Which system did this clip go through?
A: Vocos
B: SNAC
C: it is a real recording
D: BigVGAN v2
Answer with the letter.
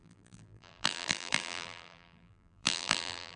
D